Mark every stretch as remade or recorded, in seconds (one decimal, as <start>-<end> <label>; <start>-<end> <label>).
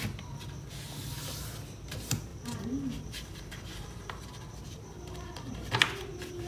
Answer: 0.0-2.3 recorded; 2.3-5.7 remade; 5.7-6.5 recorded